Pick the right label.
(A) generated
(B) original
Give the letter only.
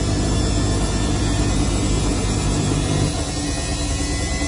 B